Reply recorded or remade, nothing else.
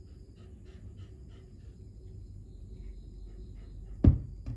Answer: recorded